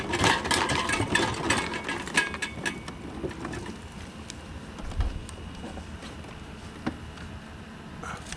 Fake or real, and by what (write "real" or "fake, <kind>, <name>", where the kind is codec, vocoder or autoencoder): real